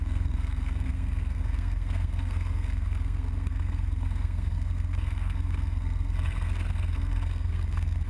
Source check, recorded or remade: remade